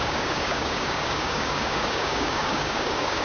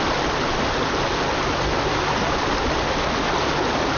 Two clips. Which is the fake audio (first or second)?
first